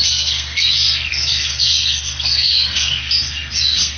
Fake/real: fake